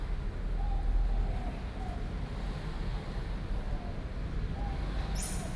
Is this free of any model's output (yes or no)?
yes